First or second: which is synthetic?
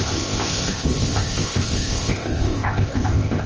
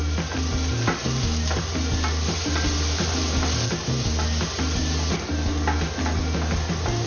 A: first